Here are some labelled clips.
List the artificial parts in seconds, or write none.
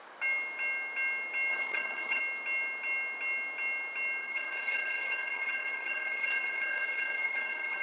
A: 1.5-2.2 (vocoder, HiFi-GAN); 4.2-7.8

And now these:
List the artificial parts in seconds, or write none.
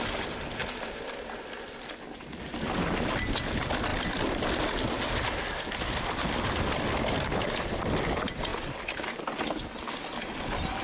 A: 0.6-1.9 (vocoder, BigVGAN v2); 3.9-4.6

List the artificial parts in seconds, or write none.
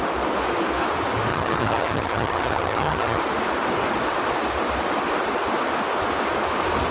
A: 1.3-3.2 (vocoder, HiFi-GAN)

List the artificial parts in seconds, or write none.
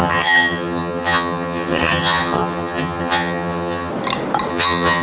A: 0.0-3.9 (vocoder, HiFi-GAN); 4.5-5.0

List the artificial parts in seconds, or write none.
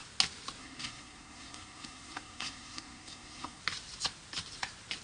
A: 0.6-3.6 (codec, SNAC)